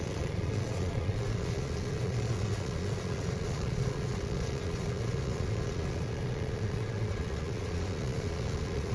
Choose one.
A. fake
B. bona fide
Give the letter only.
A